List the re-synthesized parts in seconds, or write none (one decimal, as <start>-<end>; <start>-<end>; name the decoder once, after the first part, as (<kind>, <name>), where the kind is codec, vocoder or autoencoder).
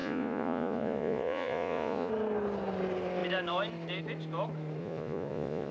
0.0-2.1 (vocoder, Vocos); 4.8-5.7